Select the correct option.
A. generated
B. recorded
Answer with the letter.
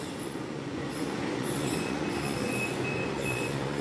A